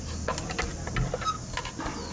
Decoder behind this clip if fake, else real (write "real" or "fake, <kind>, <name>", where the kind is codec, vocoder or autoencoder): real